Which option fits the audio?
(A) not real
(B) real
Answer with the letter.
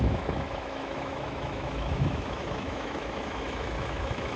A